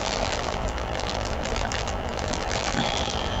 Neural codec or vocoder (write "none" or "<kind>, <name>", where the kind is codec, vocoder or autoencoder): vocoder, BigVGAN v2